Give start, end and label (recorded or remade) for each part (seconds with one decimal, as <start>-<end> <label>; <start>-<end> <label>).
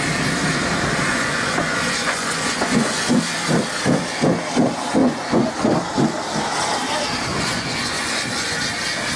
0.0-1.1 recorded; 1.1-3.2 remade; 3.2-5.0 recorded; 5.0-5.5 remade; 5.5-7.3 recorded; 7.3-8.6 remade; 8.6-9.2 recorded